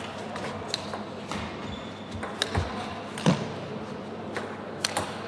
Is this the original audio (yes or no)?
yes